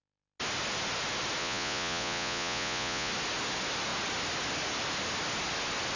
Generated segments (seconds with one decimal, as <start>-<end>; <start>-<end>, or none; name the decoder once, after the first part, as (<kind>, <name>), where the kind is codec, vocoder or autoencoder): 1.4-3.1 (vocoder, Vocos)